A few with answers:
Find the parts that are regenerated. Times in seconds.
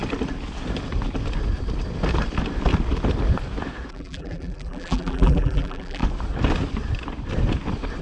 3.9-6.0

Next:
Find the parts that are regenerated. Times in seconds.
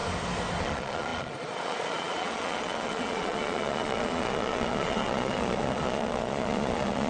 0.6-7.1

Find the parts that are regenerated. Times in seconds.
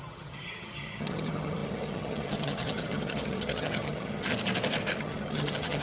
0.0-4.3; 5.0-5.8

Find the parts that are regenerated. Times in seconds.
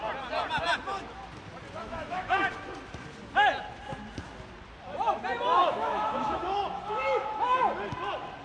1.8-2.4; 5.6-7.6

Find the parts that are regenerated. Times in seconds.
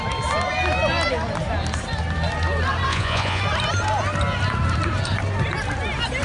2.9-3.4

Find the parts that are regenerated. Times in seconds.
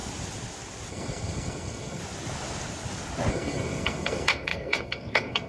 0.9-2.0; 3.3-5.5